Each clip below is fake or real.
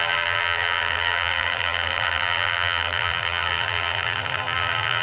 fake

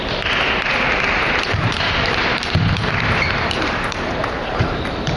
fake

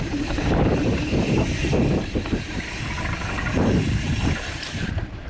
fake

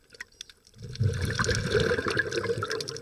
real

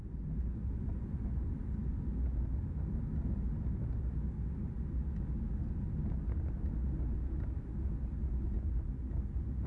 real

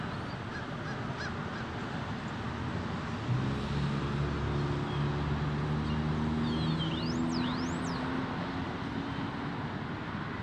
real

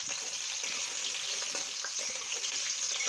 real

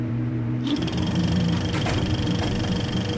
fake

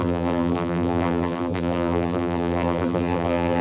fake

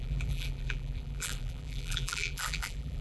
fake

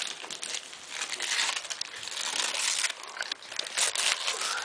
real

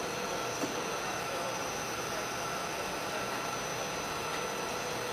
real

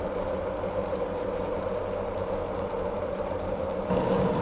fake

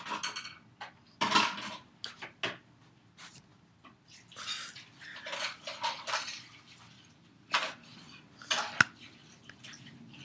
real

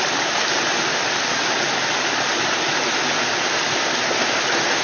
real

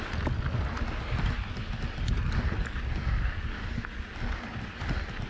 real